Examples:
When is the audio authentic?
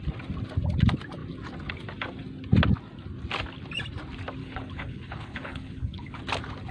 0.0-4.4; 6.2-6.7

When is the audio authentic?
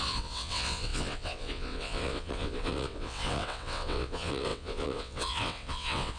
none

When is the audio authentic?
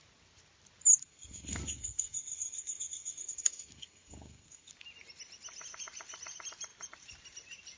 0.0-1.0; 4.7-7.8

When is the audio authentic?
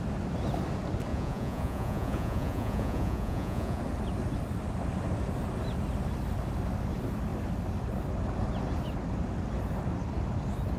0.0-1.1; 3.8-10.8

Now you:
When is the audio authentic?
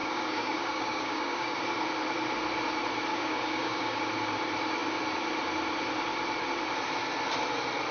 1.6-3.1; 4.0-7.9